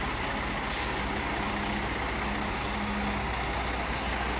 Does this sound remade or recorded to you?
recorded